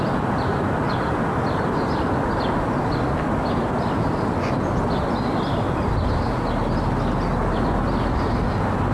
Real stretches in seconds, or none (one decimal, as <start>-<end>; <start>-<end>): 0.0-8.9